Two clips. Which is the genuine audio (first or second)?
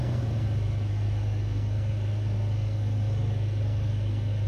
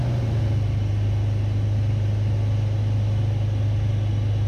second